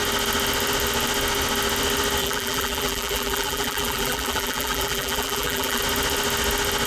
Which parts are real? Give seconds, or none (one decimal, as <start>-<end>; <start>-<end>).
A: 0.0-2.2; 5.8-6.9